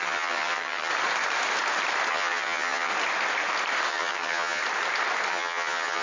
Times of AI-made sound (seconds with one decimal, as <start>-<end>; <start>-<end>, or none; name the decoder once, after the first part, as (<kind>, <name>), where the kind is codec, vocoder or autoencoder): 0.0-0.9 (vocoder, HiFi-GAN); 2.1-2.9; 3.9-4.6; 5.3-6.0